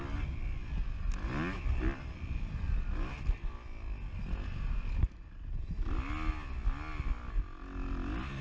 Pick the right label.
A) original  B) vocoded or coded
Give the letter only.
A